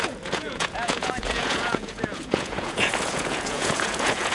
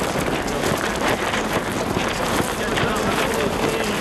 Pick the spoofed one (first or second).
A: first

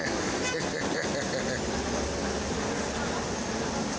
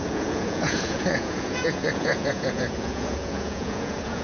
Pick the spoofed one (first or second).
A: second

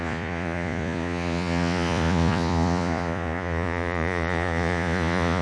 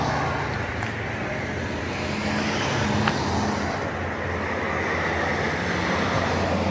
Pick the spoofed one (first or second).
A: first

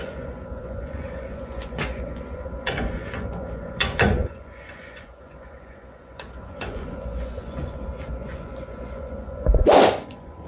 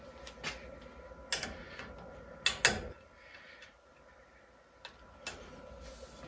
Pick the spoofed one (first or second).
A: first